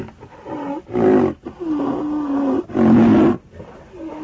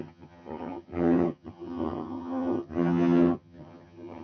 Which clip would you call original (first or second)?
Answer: first